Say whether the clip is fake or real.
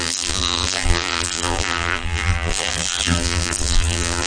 fake